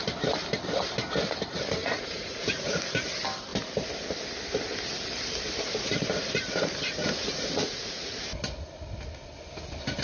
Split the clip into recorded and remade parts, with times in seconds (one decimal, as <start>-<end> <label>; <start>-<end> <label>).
0.0-1.8 recorded; 1.8-2.8 remade; 2.8-7.0 recorded; 7.0-8.2 remade; 8.2-10.0 recorded